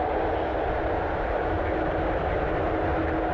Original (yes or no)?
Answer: yes